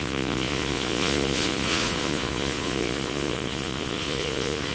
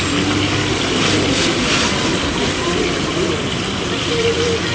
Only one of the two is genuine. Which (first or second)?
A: second